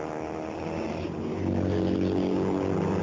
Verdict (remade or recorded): recorded